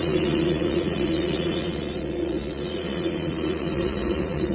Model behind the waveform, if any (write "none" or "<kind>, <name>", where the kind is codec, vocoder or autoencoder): vocoder, Vocos